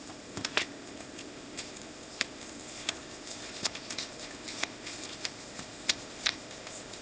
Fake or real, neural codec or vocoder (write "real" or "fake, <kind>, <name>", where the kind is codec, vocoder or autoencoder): fake, codec, ZipCodec